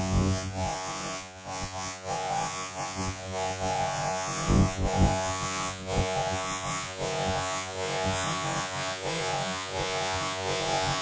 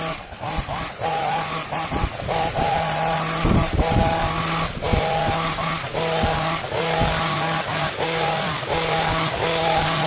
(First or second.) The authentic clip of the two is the second